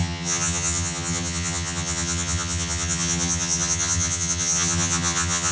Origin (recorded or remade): remade